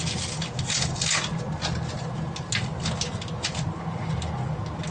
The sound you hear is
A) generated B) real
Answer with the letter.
B